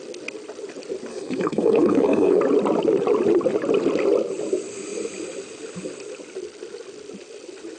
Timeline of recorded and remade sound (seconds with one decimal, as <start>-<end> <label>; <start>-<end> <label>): 0.0-1.1 recorded; 1.1-2.4 remade; 2.4-7.8 recorded